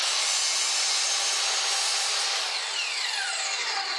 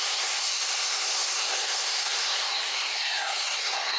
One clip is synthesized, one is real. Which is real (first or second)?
first